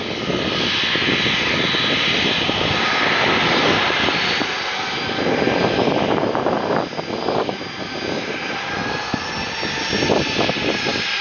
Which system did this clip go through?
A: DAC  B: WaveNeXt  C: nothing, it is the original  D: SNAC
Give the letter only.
C